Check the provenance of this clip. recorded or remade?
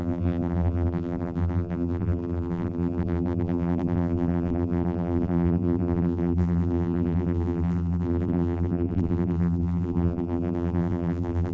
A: remade